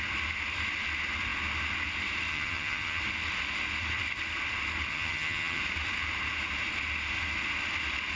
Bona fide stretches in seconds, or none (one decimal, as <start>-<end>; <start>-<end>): 0.0-2.3; 3.0-4.9; 5.6-8.2